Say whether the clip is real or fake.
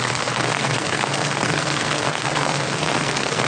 fake